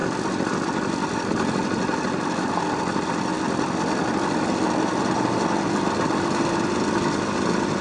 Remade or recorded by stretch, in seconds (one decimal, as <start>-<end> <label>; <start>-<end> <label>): 0.0-7.8 recorded